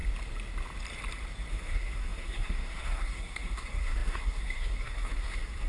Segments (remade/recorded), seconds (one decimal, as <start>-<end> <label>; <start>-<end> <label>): 0.0-1.5 recorded; 1.5-5.7 remade